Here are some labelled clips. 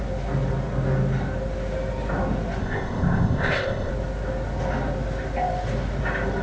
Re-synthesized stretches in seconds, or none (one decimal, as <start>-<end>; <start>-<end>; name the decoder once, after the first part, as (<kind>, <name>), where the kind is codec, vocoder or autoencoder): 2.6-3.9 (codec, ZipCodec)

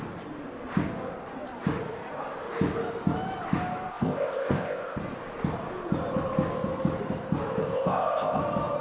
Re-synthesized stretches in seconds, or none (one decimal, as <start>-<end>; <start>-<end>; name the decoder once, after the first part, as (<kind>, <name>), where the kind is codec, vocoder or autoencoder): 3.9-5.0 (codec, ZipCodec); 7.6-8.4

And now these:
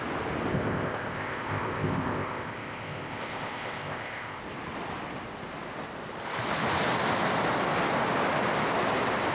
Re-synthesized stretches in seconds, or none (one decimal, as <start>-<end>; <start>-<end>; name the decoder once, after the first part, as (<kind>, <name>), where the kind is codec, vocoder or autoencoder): 0.5-4.4 (codec, ZipCodec)